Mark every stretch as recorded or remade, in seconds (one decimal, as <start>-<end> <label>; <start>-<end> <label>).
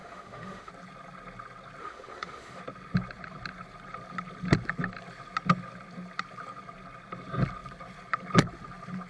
0.0-0.7 remade; 0.7-1.8 recorded; 1.8-2.6 remade; 2.6-9.1 recorded